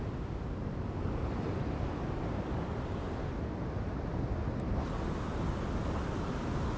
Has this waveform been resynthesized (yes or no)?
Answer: no